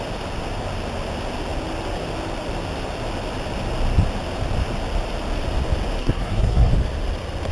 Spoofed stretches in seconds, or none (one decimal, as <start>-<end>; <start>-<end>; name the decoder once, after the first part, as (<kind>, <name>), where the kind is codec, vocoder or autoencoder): 6.0-6.7 (codec, SNAC)